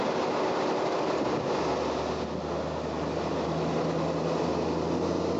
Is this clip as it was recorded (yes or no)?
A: yes